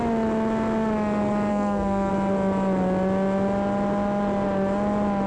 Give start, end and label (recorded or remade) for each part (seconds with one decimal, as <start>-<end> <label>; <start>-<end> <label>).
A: 0.0-1.5 recorded; 1.5-2.1 remade; 2.1-5.3 recorded